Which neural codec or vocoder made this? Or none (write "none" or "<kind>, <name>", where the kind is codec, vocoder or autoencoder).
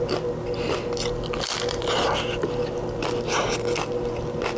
none